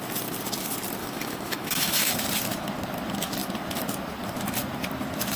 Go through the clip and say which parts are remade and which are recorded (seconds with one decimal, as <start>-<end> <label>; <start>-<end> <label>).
0.0-1.0 recorded; 1.0-2.1 remade; 2.1-5.4 recorded